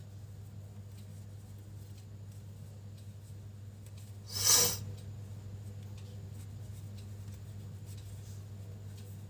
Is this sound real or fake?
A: real